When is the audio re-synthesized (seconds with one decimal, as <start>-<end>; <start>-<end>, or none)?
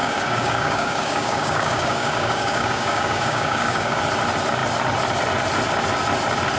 0.0-4.0